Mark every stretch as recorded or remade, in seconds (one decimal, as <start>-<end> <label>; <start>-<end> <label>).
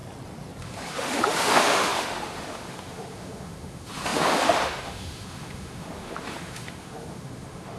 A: 0.0-0.6 recorded; 0.6-7.8 remade